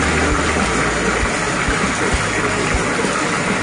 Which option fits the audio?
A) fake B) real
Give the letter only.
B